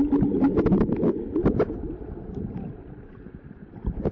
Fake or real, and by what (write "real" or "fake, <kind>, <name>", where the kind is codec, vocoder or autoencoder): real